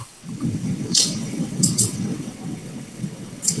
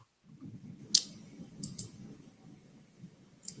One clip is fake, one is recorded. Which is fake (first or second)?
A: first